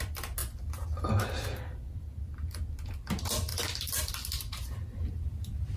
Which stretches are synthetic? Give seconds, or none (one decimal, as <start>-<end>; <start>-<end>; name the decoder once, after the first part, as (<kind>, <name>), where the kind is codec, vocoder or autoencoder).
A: 0.4-1.1 (vocoder, BigVGAN v2); 3.5-4.1